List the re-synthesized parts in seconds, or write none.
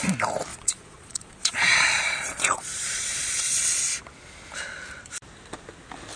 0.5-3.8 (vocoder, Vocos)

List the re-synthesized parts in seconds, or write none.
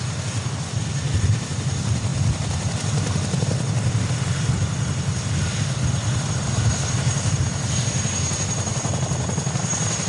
none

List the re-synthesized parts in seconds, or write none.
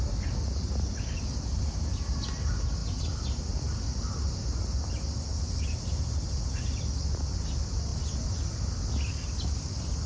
none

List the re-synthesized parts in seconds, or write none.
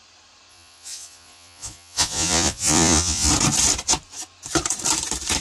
0.5-3.3 (vocoder, Vocos)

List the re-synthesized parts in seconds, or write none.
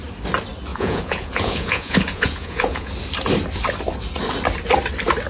0.7-2.9 (vocoder, Vocos)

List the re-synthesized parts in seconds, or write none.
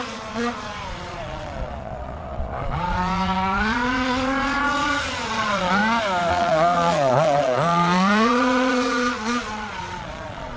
0.0-5.8 (vocoder, Vocos); 6.3-10.6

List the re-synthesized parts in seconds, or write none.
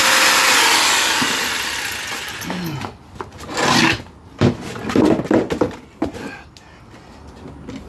none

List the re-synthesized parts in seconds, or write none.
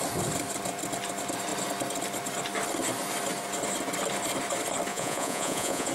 4.9-5.9 (vocoder, Vocos)